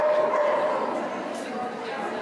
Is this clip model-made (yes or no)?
no